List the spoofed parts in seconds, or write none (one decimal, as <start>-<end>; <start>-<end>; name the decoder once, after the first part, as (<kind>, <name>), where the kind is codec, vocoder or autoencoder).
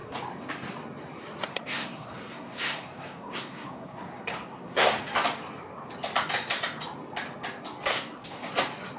1.5-4.9 (codec, SNAC); 7.9-8.5